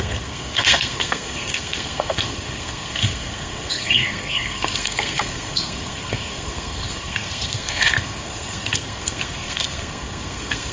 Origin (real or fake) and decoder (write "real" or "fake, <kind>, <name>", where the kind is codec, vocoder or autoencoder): fake, codec, SNAC